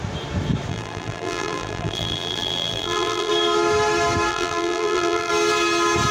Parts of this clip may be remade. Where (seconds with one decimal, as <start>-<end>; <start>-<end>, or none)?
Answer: 0.7-3.3; 4.3-5.3